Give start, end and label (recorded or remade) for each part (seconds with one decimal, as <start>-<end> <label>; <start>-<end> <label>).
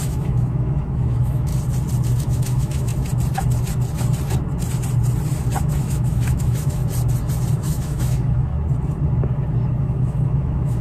0.0-1.5 remade; 1.5-2.2 recorded; 2.2-2.9 remade; 2.9-5.6 recorded; 5.6-6.8 remade; 6.8-7.5 recorded; 7.5-8.5 remade; 8.5-9.8 recorded; 9.8-10.8 remade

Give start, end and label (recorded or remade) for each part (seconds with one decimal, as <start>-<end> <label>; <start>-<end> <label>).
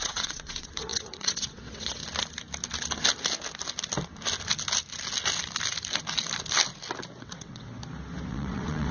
0.0-2.0 remade; 2.0-7.2 recorded; 7.2-7.8 remade; 7.8-8.3 recorded; 8.3-8.9 remade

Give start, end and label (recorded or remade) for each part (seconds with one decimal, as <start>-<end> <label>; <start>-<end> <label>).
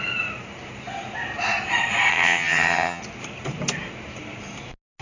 0.0-2.1 recorded; 2.1-3.0 remade; 3.0-5.0 recorded